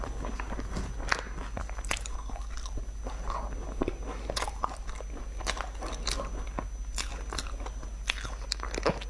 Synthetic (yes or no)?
no